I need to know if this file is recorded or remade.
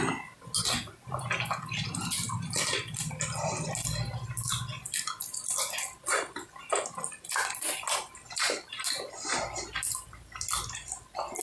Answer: recorded